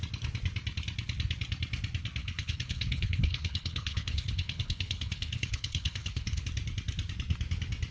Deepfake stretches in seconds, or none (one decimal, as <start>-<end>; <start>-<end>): 2.2-6.4